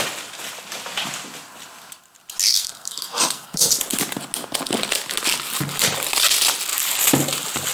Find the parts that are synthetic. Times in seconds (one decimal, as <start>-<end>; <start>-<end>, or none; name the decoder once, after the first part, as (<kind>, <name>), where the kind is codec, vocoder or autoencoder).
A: 2.5-3.7 (codec, SNAC)